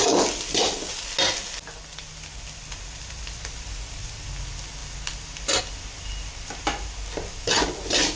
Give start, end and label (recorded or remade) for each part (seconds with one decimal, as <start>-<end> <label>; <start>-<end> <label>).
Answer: 0.0-8.2 recorded